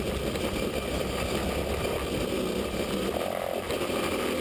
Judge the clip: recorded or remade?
recorded